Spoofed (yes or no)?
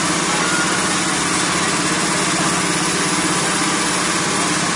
no